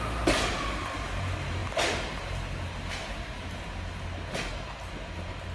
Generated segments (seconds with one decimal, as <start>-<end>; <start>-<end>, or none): none